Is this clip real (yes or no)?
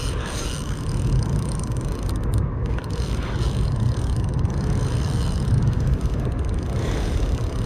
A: no